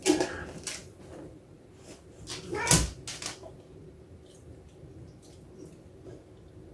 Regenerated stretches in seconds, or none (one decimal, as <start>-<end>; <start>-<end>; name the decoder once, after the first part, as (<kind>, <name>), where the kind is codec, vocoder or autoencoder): none

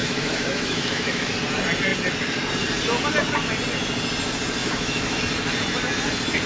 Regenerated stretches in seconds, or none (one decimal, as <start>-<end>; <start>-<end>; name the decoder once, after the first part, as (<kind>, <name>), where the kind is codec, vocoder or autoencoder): 0.0-1.3 (autoencoder, DAC-VAE); 4.6-5.2

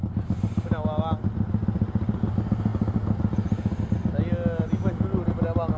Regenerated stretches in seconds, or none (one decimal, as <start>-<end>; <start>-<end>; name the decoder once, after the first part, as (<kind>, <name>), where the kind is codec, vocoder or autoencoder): none

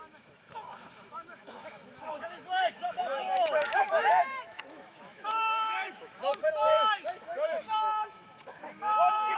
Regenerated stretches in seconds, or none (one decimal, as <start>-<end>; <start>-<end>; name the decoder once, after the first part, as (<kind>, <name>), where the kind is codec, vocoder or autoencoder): 0.0-9.4 (autoencoder, DAC-VAE)

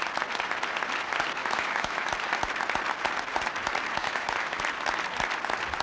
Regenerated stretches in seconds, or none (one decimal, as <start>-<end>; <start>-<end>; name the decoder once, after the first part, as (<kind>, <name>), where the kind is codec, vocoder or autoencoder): 1.4-2.1 (autoencoder, DAC-VAE); 4.0-4.6

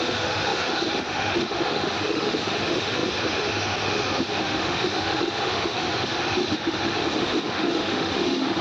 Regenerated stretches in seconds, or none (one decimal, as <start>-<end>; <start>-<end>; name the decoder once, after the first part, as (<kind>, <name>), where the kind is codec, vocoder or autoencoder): 0.0-8.6 (autoencoder, DAC-VAE)

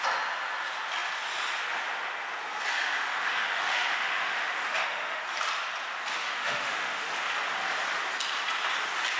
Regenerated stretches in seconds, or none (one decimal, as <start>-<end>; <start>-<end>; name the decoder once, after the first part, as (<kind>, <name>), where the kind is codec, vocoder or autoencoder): 2.7-5.2 (autoencoder, DAC-VAE); 6.1-7.1